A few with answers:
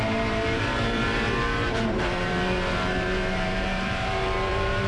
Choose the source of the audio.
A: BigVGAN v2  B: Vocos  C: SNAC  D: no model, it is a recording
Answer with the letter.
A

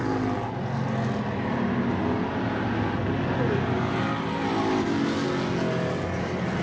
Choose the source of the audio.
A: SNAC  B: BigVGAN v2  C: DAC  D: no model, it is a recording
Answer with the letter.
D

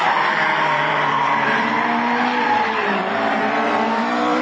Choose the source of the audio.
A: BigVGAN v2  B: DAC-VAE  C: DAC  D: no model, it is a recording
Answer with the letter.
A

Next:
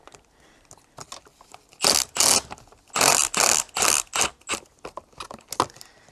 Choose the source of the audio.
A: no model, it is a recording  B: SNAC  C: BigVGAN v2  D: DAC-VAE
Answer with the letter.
A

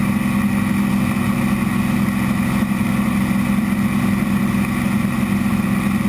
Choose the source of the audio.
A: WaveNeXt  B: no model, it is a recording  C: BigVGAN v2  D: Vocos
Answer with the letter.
B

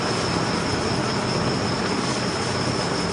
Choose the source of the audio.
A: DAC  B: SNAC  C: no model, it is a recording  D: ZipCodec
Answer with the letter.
C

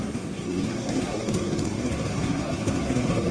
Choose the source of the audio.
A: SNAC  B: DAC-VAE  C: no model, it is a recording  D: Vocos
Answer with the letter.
A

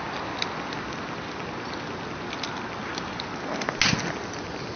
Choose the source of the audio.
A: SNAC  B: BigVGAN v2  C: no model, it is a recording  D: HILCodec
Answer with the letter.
C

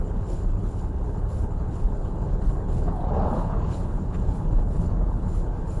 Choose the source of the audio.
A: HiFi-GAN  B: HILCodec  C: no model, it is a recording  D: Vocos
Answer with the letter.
B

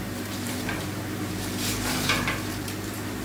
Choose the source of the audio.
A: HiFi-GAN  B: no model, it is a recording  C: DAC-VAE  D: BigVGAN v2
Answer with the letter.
D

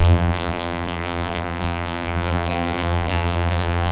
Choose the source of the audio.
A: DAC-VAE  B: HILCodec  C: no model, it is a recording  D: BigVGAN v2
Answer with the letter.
D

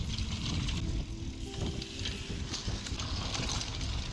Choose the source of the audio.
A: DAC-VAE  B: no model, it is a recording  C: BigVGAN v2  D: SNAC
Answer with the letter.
B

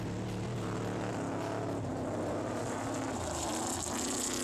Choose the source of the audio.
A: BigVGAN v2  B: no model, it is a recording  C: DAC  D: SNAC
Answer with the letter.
B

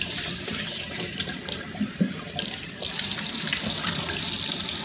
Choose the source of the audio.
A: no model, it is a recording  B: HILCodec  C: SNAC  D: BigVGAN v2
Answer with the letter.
D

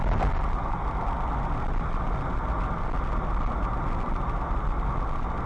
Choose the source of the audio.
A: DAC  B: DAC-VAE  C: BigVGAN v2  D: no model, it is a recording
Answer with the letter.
D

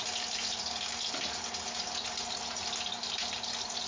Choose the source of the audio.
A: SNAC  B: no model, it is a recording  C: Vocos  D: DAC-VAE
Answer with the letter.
B